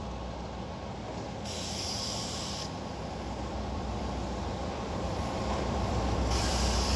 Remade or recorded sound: remade